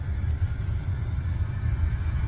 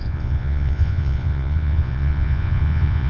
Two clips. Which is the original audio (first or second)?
first